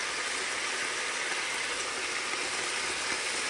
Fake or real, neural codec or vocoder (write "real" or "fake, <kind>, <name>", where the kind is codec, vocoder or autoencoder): real